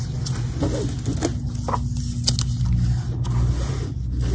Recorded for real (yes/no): yes